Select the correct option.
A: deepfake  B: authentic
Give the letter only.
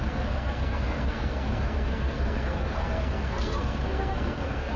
A